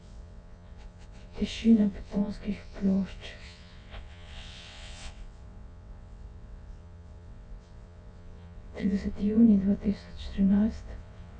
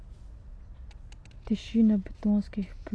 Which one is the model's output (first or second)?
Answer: first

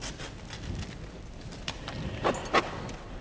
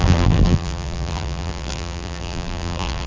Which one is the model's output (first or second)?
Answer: second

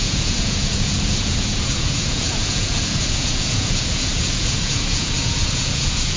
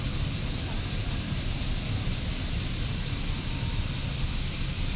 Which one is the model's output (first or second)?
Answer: first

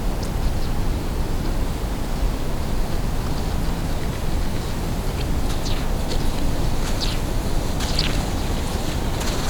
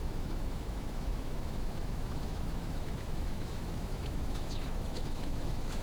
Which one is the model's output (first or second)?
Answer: second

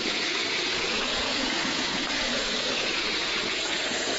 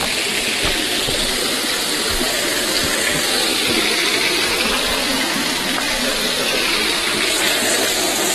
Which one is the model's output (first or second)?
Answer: first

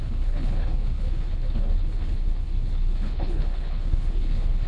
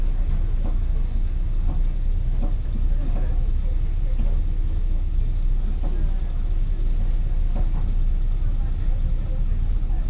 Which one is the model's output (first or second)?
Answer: first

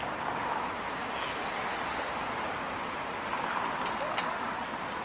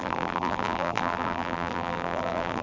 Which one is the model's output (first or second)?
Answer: second